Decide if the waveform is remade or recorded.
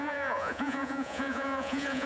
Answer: remade